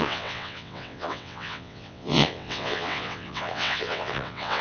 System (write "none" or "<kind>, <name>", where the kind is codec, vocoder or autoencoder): vocoder, WaveNeXt